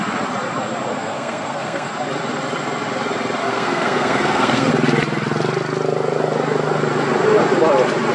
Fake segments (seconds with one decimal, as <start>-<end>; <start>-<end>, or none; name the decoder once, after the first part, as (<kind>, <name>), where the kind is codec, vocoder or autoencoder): 0.9-1.9 (codec, SNAC); 3.4-4.7